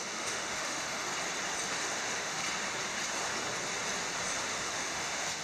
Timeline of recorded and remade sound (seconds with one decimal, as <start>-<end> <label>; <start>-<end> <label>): 0.0-1.1 remade; 1.1-1.7 recorded; 1.7-2.4 remade; 2.4-4.6 recorded; 4.6-5.4 remade